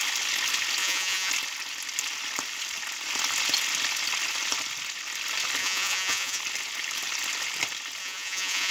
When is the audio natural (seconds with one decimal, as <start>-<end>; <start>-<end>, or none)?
0.0-0.8; 1.3-5.6; 6.4-8.0